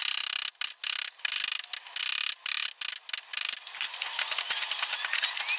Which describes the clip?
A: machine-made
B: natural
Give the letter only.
B